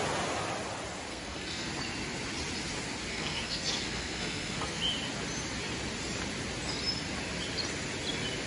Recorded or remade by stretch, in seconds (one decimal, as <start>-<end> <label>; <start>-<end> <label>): 0.0-1.1 recorded; 1.1-1.7 remade; 1.7-3.1 recorded; 3.1-4.8 remade; 4.8-8.5 recorded